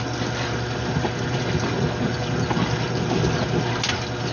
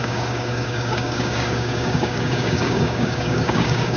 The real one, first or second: first